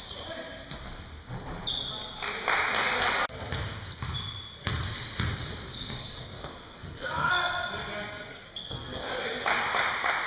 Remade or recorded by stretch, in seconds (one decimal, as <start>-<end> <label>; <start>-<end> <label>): 0.0-6.0 recorded; 6.0-7.3 remade; 7.3-8.3 recorded; 8.3-9.1 remade; 9.1-10.3 recorded